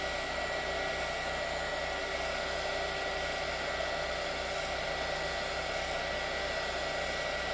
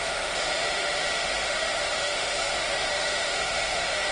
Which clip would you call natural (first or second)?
first